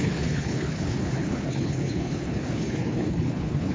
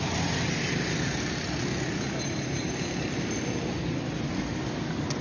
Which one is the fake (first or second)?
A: first